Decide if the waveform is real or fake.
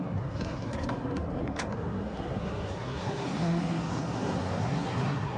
fake